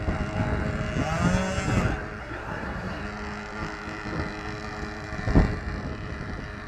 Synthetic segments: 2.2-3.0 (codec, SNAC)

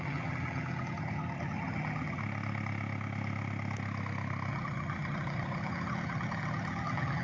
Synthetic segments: 0.0-2.2 (vocoder, HiFi-GAN); 4.5-7.2

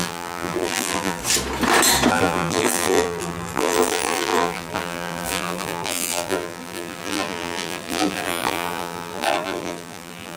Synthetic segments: 0.0-1.2 (vocoder, BigVGAN v2); 2.1-10.4

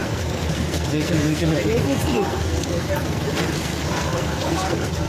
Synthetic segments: 0.0-5.1 (codec, SNAC)

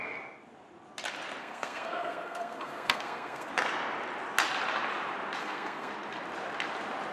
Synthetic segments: 1.4-3.5 (codec, SNAC); 5.4-5.9